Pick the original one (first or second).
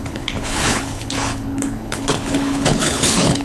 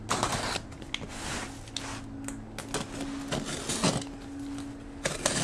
second